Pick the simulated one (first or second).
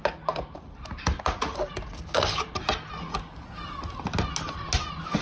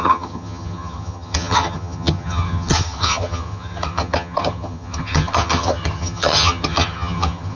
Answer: second